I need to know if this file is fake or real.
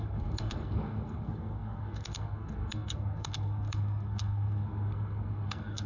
fake